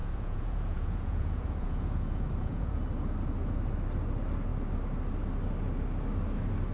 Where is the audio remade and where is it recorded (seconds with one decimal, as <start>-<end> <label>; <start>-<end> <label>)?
0.0-2.8 remade; 2.8-6.7 recorded

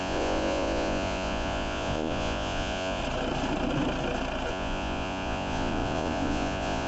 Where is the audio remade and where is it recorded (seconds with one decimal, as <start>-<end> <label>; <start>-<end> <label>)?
0.0-3.0 remade; 3.0-4.5 recorded; 4.5-6.9 remade

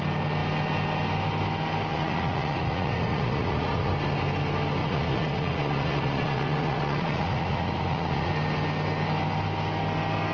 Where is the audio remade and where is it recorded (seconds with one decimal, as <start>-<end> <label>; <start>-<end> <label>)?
0.0-1.9 recorded; 1.9-3.9 remade; 3.9-4.8 recorded; 4.8-8.3 remade; 8.3-10.3 recorded

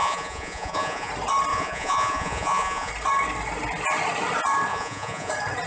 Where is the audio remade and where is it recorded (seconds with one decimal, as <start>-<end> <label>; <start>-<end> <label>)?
0.0-1.1 remade; 1.1-1.5 recorded; 1.5-2.9 remade; 2.9-4.7 recorded; 4.7-5.3 remade; 5.3-5.7 recorded